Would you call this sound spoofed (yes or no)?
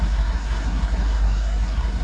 yes